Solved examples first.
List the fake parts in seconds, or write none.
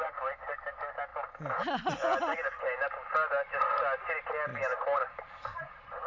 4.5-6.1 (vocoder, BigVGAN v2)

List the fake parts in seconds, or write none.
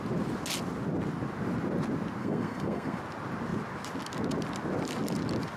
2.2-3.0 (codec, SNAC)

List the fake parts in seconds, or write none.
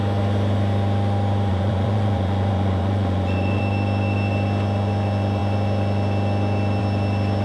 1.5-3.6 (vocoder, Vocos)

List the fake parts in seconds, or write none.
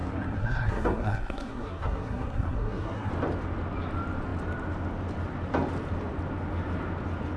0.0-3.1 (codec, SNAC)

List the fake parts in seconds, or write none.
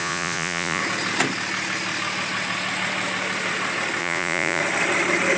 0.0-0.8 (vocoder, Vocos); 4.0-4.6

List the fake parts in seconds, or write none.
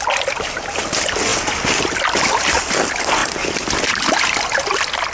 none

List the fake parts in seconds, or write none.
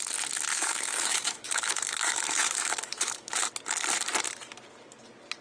0.5-3.5 (autoencoder, DAC-VAE)